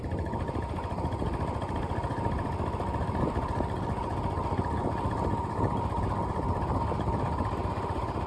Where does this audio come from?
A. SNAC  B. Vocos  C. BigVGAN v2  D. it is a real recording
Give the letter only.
D